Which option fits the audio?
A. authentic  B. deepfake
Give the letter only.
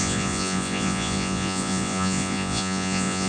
B